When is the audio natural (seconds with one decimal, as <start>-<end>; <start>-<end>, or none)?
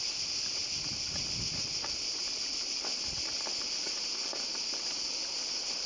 0.0-0.6; 4.1-5.9